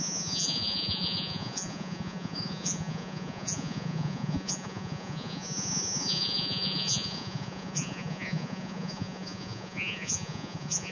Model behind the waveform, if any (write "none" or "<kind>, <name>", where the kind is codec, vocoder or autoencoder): vocoder, Vocos